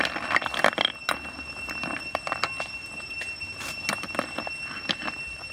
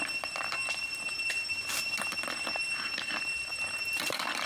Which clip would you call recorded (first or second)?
first